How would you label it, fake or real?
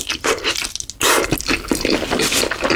real